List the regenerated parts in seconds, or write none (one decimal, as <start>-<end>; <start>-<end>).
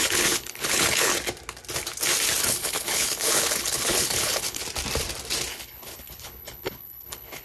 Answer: 0.0-1.1; 2.4-4.6; 5.5-7.4